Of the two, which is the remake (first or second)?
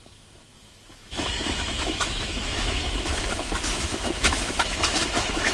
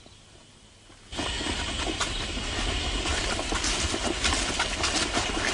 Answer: first